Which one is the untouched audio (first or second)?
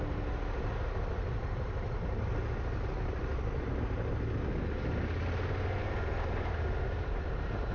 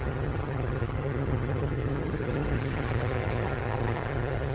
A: first